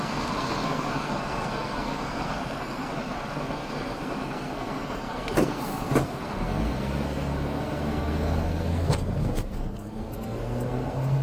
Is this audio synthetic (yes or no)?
yes